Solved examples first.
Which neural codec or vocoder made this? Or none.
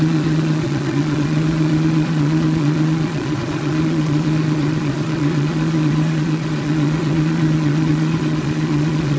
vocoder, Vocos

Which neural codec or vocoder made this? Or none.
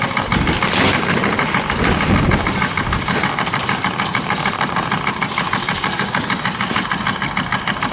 none